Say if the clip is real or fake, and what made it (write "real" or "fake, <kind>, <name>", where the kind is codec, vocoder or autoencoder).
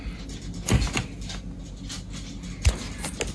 real